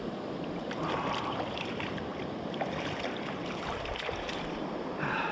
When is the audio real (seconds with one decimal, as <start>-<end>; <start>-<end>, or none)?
none